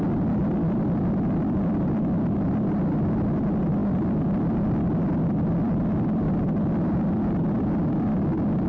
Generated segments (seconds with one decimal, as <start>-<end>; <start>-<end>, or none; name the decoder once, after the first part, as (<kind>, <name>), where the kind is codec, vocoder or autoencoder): none